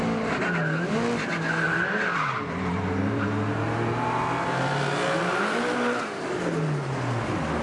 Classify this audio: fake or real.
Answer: real